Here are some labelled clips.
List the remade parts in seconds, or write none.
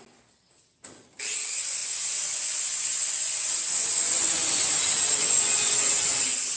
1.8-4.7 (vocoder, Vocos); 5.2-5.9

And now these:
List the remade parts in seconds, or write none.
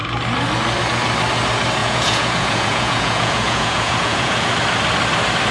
1.8-4.5 (vocoder, Vocos)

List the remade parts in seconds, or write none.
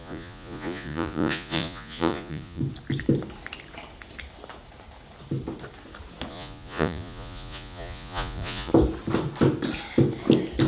0.0-2.6 (vocoder, Vocos); 6.3-8.7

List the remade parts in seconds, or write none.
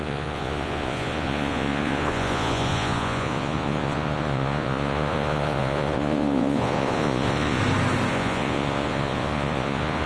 0.0-7.6 (vocoder, Vocos); 8.1-10.1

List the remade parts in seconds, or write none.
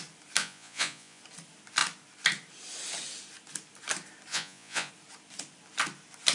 0.4-1.2 (vocoder, Vocos); 4.3-4.9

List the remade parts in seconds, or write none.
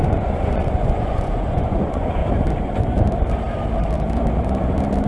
0.0-2.2 (vocoder, Vocos)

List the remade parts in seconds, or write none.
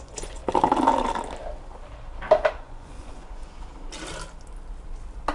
0.0-0.4 (vocoder, Vocos); 2.5-3.7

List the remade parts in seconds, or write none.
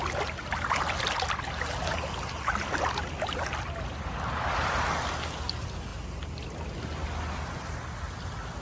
none